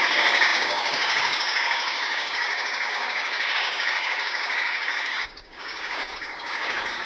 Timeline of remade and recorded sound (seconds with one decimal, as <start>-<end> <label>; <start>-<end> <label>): 0.0-7.0 remade